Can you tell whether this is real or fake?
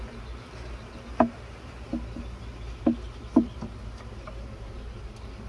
real